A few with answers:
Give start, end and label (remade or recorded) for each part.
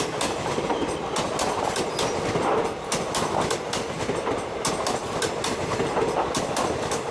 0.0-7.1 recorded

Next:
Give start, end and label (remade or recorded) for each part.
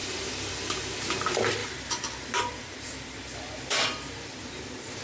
0.0-0.5 remade; 0.5-1.6 recorded; 1.6-4.6 remade; 4.6-5.0 recorded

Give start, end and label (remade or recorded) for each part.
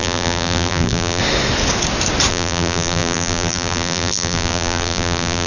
0.0-1.2 remade; 1.2-2.3 recorded; 2.3-5.5 remade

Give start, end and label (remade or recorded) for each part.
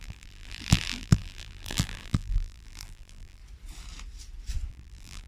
0.0-3.4 remade; 3.4-4.7 recorded; 4.7-5.3 remade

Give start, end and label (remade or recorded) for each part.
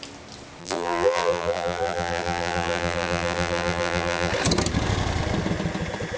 0.0-0.6 recorded; 0.6-4.3 remade; 4.3-6.2 recorded